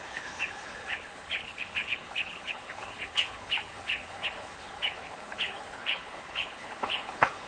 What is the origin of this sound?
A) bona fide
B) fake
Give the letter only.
B